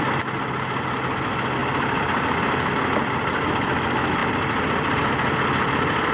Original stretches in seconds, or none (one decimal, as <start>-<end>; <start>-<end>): 0.0-6.1